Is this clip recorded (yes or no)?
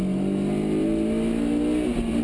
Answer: yes